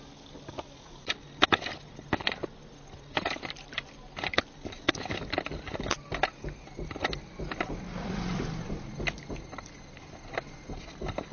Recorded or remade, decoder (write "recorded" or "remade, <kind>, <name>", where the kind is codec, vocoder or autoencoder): recorded